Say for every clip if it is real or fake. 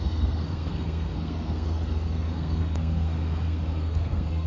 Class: fake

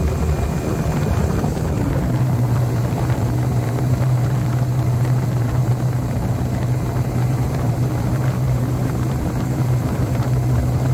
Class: fake